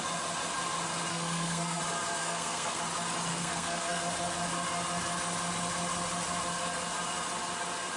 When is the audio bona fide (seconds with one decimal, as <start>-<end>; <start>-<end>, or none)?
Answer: 0.0-1.1; 1.8-2.2; 2.8-3.3; 4.0-8.0